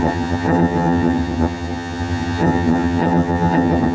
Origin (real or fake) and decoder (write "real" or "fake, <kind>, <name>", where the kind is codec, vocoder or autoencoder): fake, vocoder, HiFi-GAN